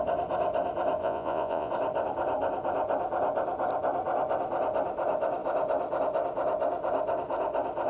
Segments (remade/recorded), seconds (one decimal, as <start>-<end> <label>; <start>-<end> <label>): 0.0-1.0 recorded; 1.0-1.7 remade; 1.7-7.9 recorded